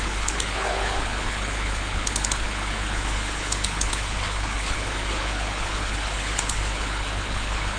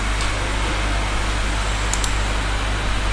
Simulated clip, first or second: first